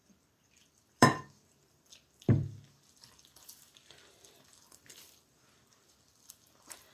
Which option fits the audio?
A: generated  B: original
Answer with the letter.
A